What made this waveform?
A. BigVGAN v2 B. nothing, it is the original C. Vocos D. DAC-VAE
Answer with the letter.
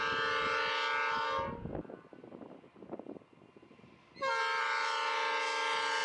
B